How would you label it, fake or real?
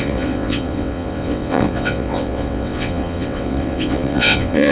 fake